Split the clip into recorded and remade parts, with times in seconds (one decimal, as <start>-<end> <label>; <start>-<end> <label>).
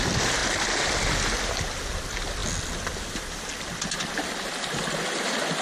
0.0-5.6 recorded